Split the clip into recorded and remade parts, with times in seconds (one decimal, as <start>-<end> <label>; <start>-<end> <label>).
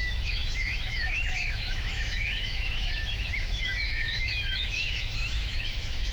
0.0-6.1 remade